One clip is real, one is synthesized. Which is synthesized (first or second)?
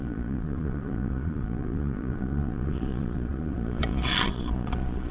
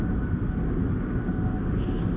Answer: first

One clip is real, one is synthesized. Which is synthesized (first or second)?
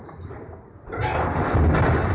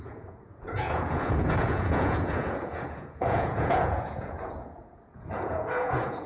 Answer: second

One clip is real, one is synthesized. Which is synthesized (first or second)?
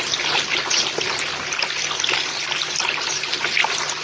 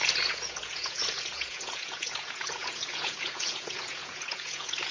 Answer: second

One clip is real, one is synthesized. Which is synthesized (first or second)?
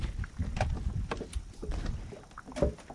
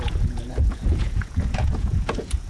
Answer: second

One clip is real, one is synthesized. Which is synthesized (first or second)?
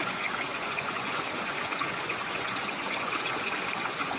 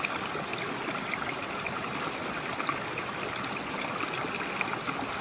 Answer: first